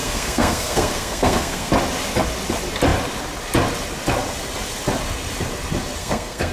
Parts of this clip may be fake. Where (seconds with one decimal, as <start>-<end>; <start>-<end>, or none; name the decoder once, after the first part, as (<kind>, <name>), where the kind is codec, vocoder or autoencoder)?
0.0-1.7 (codec, SNAC); 6.0-6.5